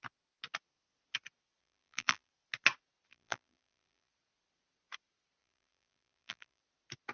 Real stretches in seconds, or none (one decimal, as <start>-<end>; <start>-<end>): 0.0-1.6; 2.3-3.1; 4.1-5.4; 6.6-7.1